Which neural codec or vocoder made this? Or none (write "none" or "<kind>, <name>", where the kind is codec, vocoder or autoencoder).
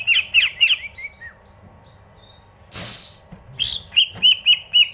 none